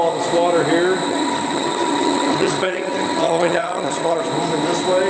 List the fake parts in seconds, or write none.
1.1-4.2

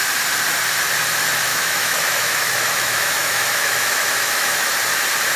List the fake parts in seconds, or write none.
1.5-4.7

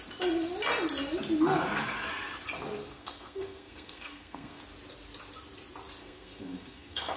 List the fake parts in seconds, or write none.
2.9-4.6; 6.0-7.2

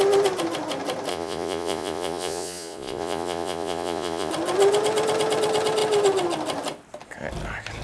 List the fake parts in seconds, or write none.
1.1-4.3